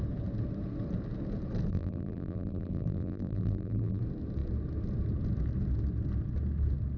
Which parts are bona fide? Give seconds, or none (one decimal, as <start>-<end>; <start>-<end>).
0.0-1.7; 4.0-7.0